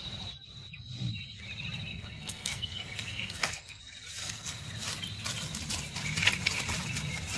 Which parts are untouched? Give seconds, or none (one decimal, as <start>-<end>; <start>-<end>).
0.0-1.9; 3.8-4.2; 4.7-7.4